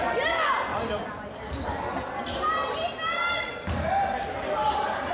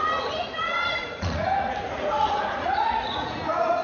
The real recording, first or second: first